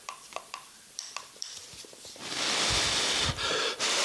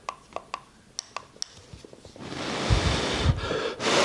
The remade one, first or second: first